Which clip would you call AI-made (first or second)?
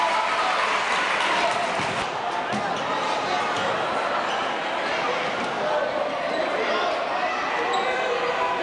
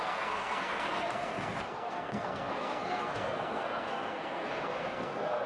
second